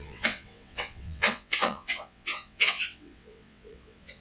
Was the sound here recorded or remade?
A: remade